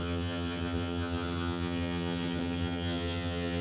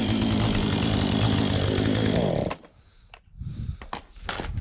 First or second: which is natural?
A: second